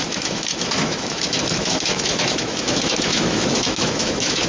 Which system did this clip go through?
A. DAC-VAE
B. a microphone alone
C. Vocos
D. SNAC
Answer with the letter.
A